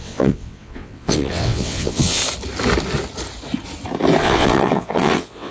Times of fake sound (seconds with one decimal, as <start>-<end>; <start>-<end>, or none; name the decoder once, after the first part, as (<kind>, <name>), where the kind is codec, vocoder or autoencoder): 0.0-2.2 (vocoder, WaveNeXt); 4.2-5.5